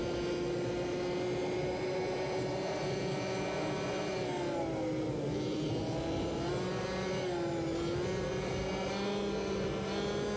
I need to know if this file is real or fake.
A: real